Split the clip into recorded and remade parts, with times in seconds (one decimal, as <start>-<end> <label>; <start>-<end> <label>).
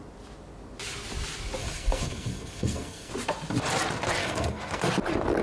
0.0-1.6 recorded; 1.6-3.1 remade; 3.1-4.2 recorded; 4.2-4.9 remade; 4.9-5.4 recorded